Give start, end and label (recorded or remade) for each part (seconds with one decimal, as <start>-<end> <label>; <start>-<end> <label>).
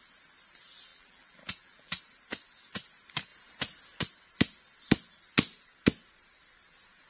0.0-0.9 recorded; 0.9-2.0 remade; 2.0-7.1 recorded